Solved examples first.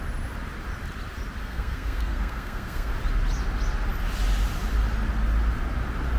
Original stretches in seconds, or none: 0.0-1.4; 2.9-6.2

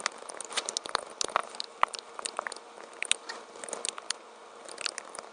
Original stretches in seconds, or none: 0.0-5.3

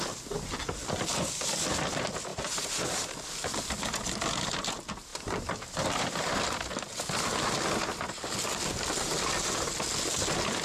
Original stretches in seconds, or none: 0.0-2.3; 3.7-10.6

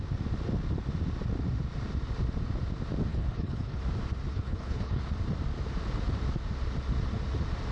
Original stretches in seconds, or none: 0.0-3.1; 3.8-4.3; 5.0-7.7

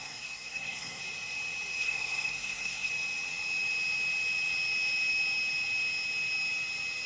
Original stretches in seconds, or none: 1.0-1.8; 2.9-7.1

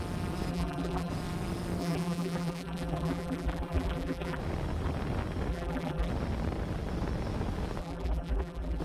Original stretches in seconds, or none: 0.0-0.5; 1.1-1.8; 4.4-5.5; 6.1-7.8